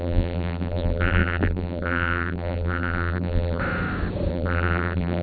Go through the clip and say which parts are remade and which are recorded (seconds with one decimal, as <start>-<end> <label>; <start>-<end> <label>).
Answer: 0.0-3.6 remade; 3.6-4.3 recorded; 4.3-5.2 remade